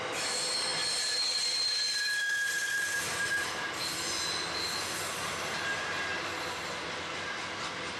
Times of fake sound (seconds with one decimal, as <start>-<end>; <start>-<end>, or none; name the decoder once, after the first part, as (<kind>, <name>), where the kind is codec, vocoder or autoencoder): none